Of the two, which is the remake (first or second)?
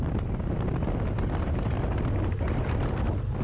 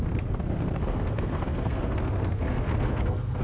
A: second